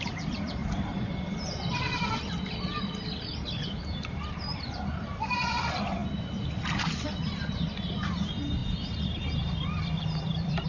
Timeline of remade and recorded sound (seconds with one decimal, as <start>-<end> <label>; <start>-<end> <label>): 0.0-6.0 remade; 6.0-7.0 recorded; 7.0-8.6 remade; 8.6-9.2 recorded; 9.2-10.7 remade